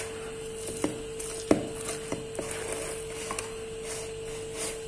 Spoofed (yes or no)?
no